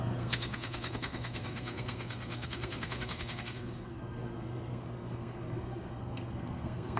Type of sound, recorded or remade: remade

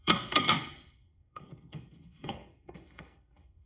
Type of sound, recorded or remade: remade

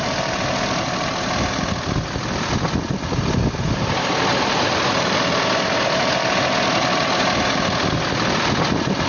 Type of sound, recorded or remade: recorded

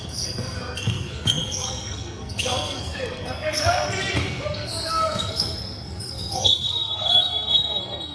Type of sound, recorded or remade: remade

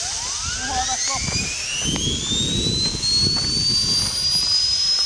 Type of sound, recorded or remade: recorded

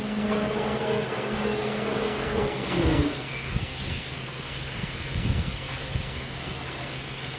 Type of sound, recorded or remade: remade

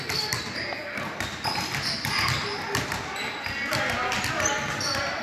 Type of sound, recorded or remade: recorded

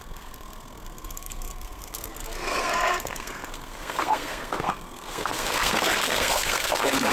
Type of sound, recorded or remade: remade